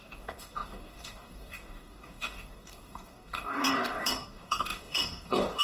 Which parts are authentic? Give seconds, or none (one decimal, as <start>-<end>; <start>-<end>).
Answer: none